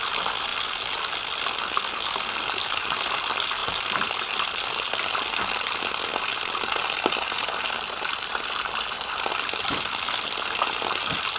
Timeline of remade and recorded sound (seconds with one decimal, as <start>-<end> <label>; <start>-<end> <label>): 0.0-11.4 recorded

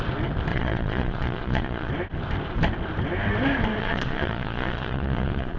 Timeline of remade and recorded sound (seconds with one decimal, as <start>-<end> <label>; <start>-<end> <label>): 0.0-0.5 recorded; 0.5-1.9 remade; 1.9-3.8 recorded; 3.8-5.6 remade

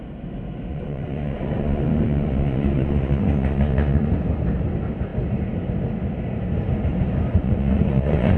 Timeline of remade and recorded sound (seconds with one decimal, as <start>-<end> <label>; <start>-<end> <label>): 0.0-0.7 recorded; 0.7-4.1 remade; 4.1-7.3 recorded; 7.3-8.4 remade

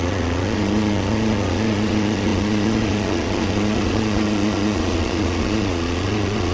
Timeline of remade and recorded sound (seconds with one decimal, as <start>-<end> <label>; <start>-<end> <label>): 0.0-6.5 remade

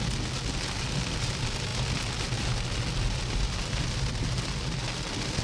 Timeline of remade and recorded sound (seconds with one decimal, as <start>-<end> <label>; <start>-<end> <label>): 0.0-5.4 recorded

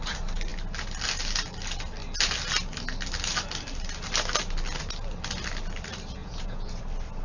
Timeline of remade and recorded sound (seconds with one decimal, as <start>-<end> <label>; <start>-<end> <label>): 0.0-6.2 recorded; 6.2-6.8 remade; 6.8-7.2 recorded

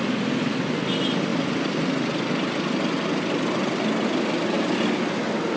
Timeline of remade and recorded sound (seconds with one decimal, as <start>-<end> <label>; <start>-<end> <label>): 0.0-5.6 recorded